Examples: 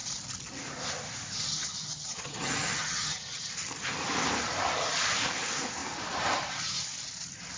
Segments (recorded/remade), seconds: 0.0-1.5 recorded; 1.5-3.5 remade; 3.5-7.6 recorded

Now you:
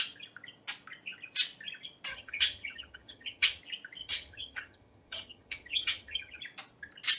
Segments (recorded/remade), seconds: 0.0-2.1 recorded; 2.1-3.6 remade; 3.6-4.0 recorded; 4.0-6.4 remade; 6.4-7.2 recorded